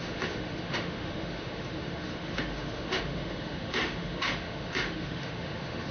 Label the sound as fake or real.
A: fake